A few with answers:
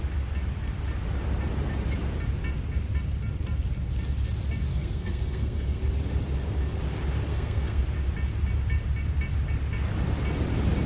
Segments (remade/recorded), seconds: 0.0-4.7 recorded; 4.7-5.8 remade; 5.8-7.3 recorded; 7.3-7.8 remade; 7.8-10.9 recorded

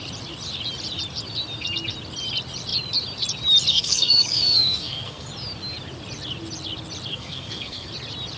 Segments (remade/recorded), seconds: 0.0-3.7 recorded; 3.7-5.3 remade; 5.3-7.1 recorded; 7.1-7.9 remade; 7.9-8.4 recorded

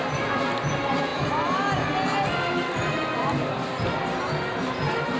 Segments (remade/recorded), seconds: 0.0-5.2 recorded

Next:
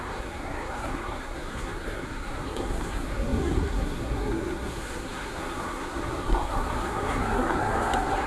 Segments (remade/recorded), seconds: 0.0-8.3 remade

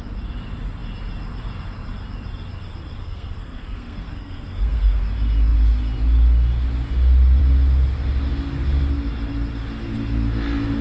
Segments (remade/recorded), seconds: 0.0-3.0 recorded; 3.0-5.0 remade; 5.0-10.8 recorded